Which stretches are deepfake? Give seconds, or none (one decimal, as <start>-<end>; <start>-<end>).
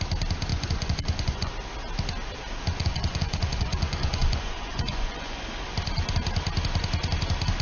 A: 0.5-1.5; 2.7-5.4